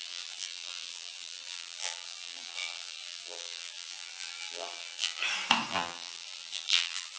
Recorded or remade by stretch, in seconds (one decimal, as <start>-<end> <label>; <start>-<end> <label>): 0.0-5.2 remade; 5.2-5.7 recorded; 5.7-7.2 remade